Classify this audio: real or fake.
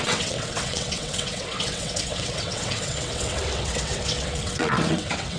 fake